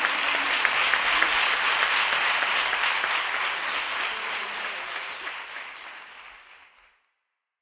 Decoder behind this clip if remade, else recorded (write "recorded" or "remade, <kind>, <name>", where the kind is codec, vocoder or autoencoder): recorded